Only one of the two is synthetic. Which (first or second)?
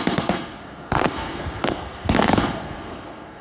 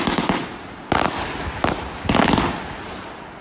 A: first